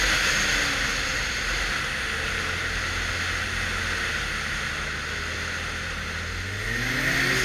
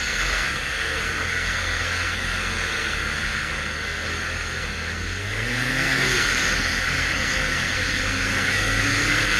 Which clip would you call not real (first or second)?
second